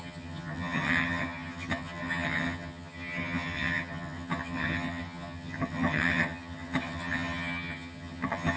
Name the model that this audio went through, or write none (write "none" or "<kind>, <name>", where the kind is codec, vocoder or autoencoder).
vocoder, HiFi-GAN